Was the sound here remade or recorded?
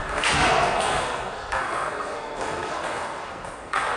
remade